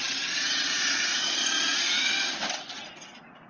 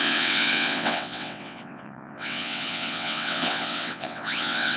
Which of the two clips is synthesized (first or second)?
second